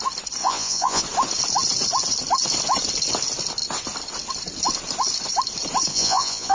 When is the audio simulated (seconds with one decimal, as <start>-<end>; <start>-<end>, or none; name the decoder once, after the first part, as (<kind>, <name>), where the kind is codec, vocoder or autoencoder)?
0.4-1.0 (vocoder, Vocos); 5.9-6.5